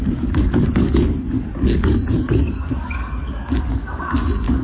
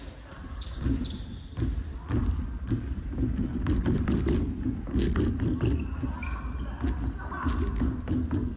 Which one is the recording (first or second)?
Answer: second